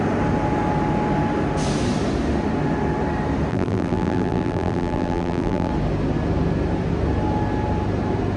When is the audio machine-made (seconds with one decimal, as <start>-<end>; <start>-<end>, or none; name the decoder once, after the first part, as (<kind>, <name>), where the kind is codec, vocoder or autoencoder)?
3.5-5.7 (vocoder, BigVGAN v2)